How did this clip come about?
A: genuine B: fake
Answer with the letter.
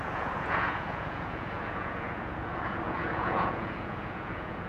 B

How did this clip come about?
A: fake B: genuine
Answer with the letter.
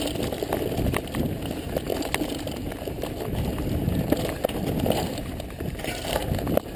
B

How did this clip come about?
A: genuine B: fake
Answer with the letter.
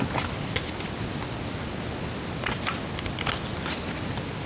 A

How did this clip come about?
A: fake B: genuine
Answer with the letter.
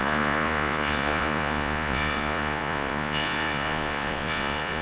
A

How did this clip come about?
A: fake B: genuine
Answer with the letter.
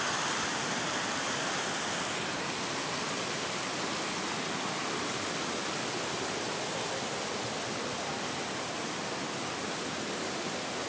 B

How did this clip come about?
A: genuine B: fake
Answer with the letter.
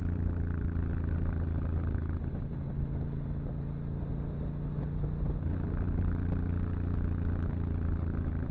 A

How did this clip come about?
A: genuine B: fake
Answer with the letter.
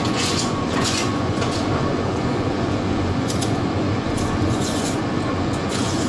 B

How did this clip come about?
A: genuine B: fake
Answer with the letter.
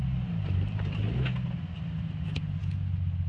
A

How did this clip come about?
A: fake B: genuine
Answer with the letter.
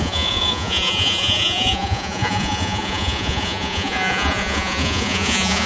A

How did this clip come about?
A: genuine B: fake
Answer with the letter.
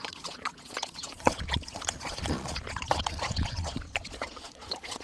B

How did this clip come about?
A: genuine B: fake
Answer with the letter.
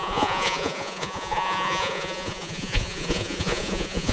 B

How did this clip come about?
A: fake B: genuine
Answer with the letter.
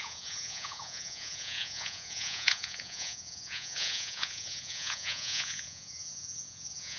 A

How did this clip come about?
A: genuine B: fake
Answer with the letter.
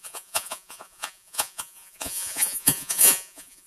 B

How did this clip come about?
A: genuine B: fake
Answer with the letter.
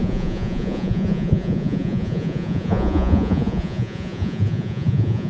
B